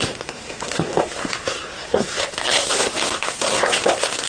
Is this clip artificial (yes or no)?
yes